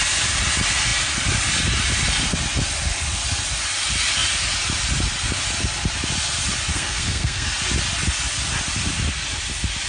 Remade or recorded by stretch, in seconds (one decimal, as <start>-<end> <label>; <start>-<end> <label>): 0.0-6.7 recorded; 6.7-7.5 remade; 7.5-9.9 recorded